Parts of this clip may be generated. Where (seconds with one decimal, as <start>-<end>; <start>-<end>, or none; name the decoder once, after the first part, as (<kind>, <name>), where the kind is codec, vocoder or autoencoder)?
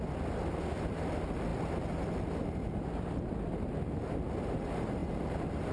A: none